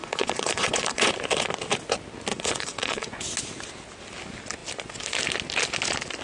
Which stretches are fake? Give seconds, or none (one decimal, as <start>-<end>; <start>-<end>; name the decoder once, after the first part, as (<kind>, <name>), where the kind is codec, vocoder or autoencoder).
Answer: 0.0-1.1 (vocoder, Vocos); 2.3-3.2